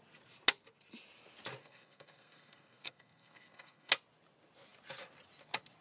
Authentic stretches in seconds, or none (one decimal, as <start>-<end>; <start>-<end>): 0.0-1.6; 3.9-5.8